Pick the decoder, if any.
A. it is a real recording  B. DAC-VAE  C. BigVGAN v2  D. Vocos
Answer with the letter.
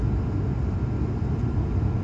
A